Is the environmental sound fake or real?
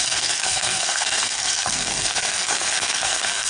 fake